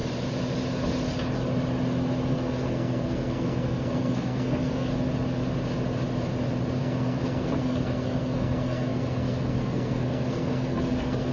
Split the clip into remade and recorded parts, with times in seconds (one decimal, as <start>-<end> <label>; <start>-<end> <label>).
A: 0.0-2.3 recorded; 2.3-4.9 remade; 4.9-6.8 recorded; 6.8-11.3 remade